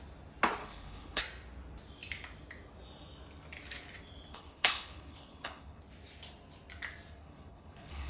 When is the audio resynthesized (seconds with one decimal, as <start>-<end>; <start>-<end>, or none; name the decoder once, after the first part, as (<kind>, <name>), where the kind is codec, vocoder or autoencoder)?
0.6-1.2 (codec, HILCodec); 4.3-5.8; 7.2-8.1

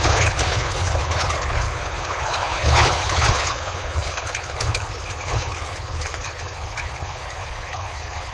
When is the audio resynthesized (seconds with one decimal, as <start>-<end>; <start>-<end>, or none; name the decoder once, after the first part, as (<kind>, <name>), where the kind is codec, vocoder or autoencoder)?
0.0-8.3 (codec, HILCodec)

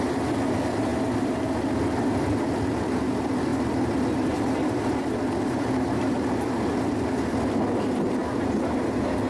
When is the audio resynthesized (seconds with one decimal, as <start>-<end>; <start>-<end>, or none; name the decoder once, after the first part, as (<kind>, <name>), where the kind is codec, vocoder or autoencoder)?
none

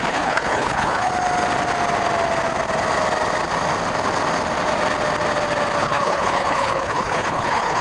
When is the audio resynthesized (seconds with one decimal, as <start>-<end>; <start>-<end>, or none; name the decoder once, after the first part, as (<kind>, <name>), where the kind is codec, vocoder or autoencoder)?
0.0-1.1 (codec, HILCodec); 5.8-7.8